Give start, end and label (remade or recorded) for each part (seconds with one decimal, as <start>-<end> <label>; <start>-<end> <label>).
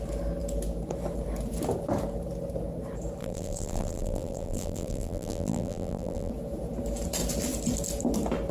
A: 0.0-3.2 recorded; 3.2-6.3 remade; 6.3-8.5 recorded